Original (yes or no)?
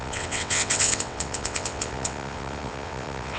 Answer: no